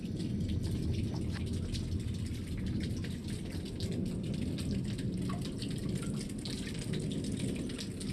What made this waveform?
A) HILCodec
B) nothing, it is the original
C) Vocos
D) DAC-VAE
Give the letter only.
B